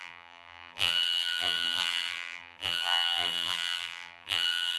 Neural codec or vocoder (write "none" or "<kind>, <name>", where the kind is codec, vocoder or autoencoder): vocoder, BigVGAN v2